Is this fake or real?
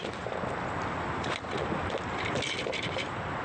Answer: real